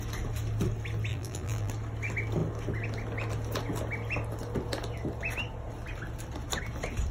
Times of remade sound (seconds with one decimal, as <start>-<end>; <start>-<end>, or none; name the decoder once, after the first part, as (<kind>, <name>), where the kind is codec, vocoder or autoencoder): 1.1-1.7 (vocoder, BigVGAN v2)